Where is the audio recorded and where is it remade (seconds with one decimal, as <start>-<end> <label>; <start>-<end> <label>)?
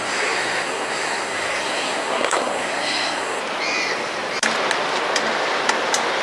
0.0-3.4 remade; 3.4-6.2 recorded